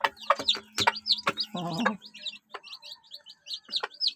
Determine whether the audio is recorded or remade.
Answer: recorded